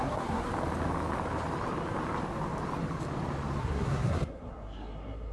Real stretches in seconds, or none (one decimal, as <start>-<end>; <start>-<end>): 0.5-3.6